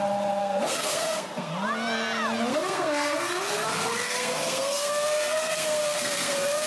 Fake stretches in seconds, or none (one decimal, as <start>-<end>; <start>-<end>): 0.4-1.5; 2.5-6.7